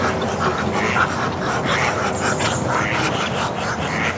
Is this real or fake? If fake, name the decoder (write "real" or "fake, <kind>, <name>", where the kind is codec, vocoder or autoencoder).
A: real